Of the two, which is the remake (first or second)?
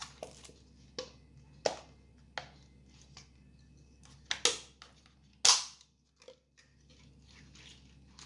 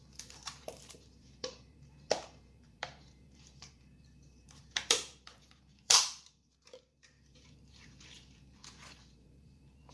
second